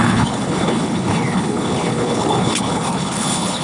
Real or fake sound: fake